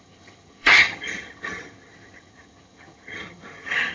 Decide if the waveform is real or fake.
fake